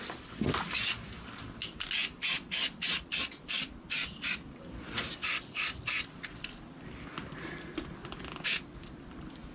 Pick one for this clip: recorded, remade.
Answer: recorded